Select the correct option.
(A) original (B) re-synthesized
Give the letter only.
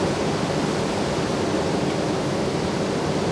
A